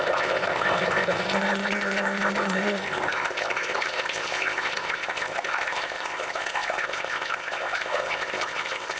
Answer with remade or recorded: remade